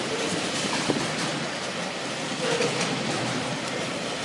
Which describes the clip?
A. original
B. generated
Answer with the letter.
A